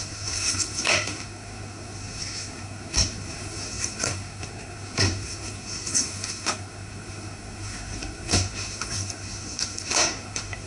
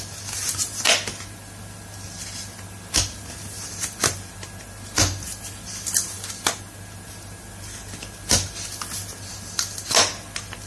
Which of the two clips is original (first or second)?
second